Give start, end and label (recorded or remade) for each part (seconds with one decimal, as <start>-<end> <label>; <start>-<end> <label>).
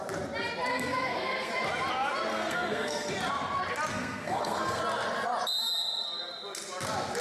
0.0-0.7 recorded; 0.7-1.5 remade; 1.5-2.3 recorded; 2.3-3.1 remade; 3.1-3.9 recorded; 3.9-4.8 remade; 4.8-7.2 recorded